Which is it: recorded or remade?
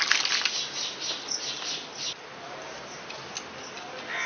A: recorded